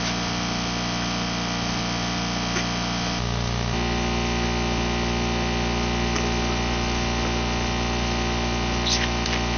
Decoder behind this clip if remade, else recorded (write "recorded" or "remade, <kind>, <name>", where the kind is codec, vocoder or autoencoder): recorded